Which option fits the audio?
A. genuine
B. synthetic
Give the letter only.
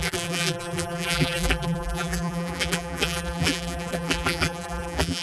B